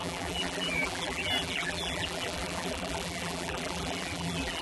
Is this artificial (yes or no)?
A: yes